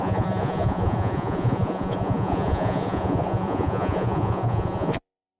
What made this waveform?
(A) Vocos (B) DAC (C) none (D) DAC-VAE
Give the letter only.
A